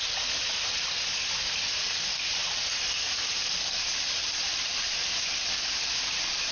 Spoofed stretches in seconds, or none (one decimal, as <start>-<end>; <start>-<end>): none